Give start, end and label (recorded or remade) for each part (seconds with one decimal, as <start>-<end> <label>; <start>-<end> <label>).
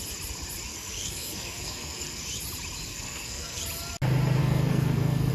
0.0-0.7 recorded; 0.7-2.2 remade; 2.2-2.9 recorded; 2.9-3.6 remade; 3.6-4.4 recorded; 4.4-5.3 remade